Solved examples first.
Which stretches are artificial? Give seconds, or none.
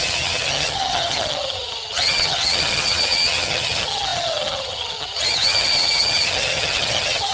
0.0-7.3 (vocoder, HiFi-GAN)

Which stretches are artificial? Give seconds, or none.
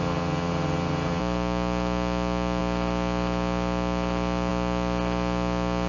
0.0-1.2 (vocoder, HiFi-GAN)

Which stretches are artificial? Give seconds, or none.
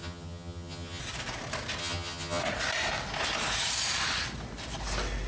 0.0-1.0 (vocoder, HiFi-GAN); 1.8-2.4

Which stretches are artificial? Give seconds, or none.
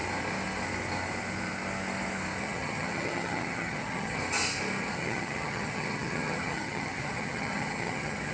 2.4-4.2 (vocoder, HiFi-GAN); 4.8-8.3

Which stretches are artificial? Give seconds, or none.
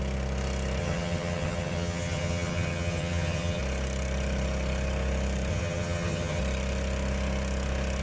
0.8-3.6 (vocoder, HiFi-GAN); 5.5-6.4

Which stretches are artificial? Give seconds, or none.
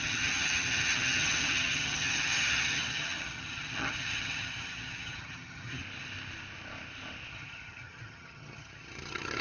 0.0-5.8 (vocoder, HiFi-GAN); 7.3-9.4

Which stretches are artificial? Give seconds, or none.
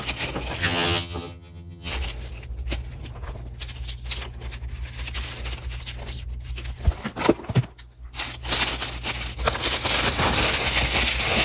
0.6-1.9 (vocoder, HiFi-GAN)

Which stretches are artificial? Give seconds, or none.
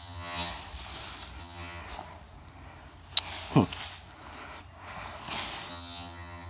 0.0-0.5 (vocoder, HiFi-GAN); 1.4-1.8; 5.7-6.5